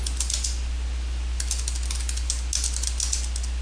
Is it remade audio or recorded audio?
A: recorded